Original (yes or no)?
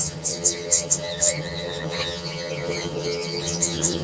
no